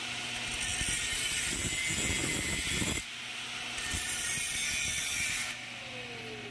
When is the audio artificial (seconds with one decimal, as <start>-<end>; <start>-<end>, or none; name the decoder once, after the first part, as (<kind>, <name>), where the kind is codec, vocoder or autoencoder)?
none